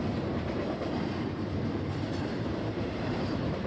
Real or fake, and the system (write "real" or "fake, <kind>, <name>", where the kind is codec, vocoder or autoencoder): fake, vocoder, BigVGAN v2